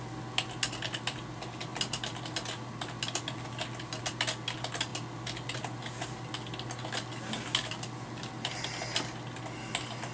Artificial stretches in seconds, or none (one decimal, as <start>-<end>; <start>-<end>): none